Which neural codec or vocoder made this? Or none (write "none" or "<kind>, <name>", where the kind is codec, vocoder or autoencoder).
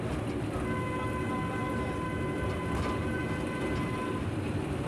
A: none